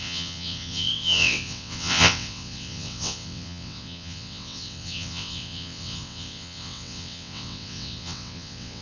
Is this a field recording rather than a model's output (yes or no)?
no